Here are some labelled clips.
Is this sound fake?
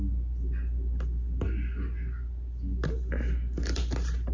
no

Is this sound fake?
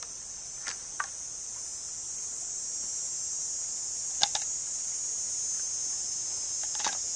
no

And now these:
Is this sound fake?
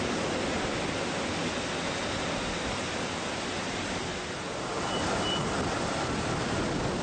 no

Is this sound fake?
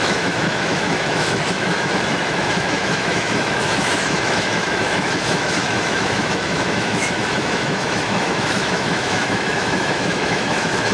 yes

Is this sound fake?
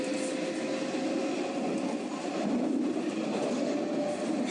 no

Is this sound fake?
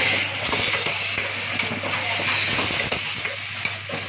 no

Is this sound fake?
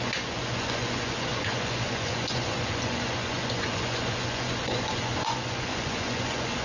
yes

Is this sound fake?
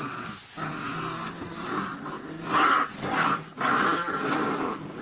no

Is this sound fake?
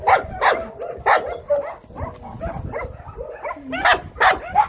no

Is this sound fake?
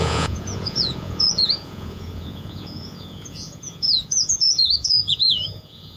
yes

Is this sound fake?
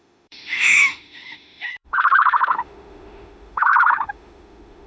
yes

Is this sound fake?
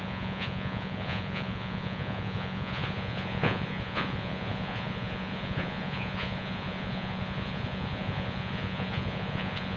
yes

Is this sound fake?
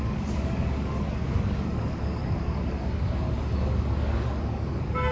yes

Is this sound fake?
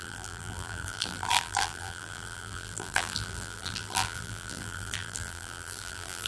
yes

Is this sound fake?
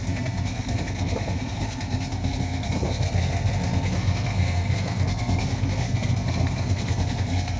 yes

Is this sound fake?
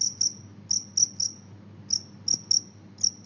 no